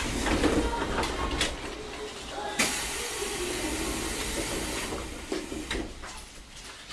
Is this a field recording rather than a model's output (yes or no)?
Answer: yes